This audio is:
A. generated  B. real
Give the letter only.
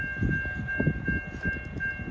B